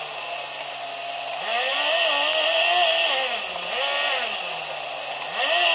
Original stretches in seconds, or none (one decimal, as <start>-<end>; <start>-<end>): 0.0-5.7